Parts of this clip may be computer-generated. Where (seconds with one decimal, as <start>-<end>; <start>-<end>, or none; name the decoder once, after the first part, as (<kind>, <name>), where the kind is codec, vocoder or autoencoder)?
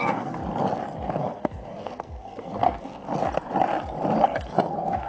0.0-0.4 (codec, SNAC); 1.2-3.1; 4.2-5.1